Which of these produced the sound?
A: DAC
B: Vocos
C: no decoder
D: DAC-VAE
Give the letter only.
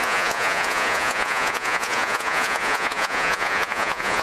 B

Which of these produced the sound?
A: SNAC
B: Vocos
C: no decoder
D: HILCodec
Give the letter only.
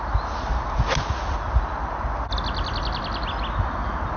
C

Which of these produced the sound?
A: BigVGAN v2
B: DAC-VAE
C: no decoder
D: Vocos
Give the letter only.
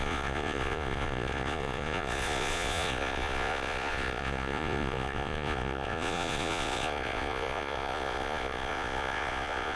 D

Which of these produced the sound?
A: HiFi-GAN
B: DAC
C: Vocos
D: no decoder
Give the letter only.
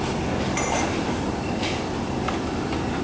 D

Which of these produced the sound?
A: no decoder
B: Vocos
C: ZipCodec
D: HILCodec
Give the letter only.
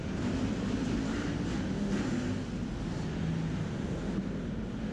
A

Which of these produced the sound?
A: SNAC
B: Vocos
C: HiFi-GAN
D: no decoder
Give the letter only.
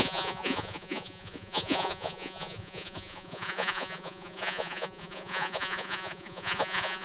B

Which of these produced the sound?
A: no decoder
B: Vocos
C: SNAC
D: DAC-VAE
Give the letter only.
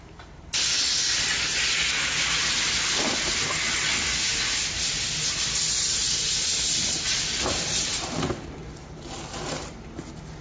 A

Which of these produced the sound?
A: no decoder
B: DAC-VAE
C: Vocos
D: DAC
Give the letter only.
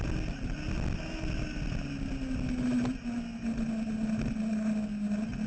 A